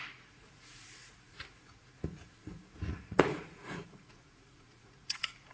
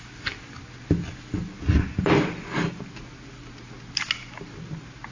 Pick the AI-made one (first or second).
first